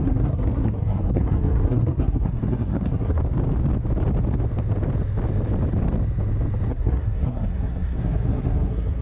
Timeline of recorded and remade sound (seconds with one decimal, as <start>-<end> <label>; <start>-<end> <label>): 0.0-3.2 remade; 3.2-6.7 recorded; 6.7-9.0 remade